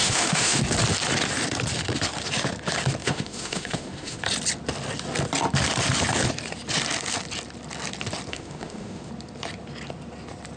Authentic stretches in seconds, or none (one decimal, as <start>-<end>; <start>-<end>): 0.6-3.0; 4.2-8.3; 9.1-10.6